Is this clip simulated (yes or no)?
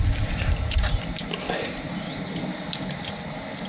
no